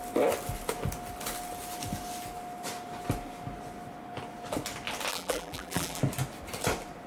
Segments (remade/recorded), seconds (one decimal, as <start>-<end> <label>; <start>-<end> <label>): 0.0-5.1 recorded; 5.1-6.0 remade; 6.0-7.1 recorded